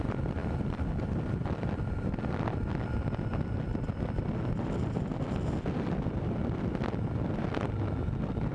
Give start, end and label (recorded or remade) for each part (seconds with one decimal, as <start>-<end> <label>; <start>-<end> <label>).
0.0-8.5 recorded